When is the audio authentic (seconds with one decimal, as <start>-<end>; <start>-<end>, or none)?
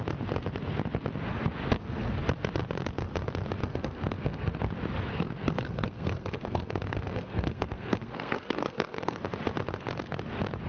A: 0.0-3.6; 4.6-5.1; 9.2-10.7